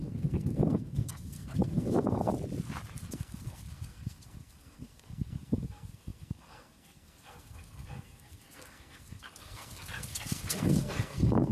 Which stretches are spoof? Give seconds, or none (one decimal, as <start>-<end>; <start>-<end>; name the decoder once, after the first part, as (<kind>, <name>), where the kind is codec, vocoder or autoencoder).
0.0-2.3 (codec, SNAC); 3.1-11.5